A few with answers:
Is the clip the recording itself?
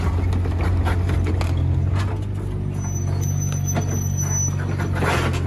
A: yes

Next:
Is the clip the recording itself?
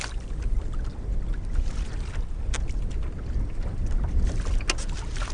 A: yes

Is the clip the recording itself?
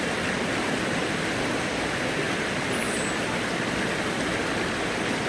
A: yes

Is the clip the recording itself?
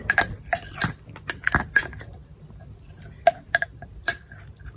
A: no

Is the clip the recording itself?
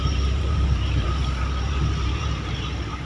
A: no